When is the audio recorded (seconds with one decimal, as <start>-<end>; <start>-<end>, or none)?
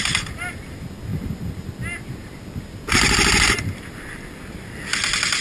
0.0-5.4